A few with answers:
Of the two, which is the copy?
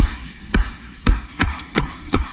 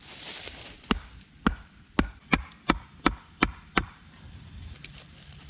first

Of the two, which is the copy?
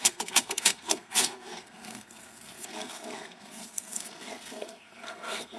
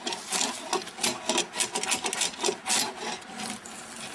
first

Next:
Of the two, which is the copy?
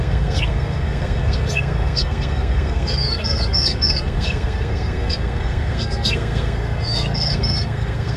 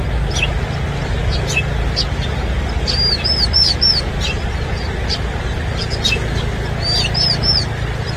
first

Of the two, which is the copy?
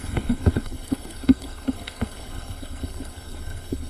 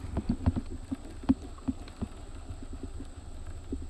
first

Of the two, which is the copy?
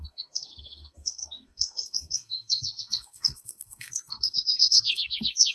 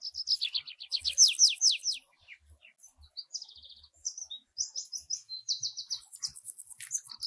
first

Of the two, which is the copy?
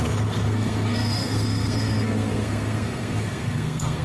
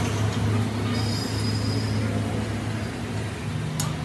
first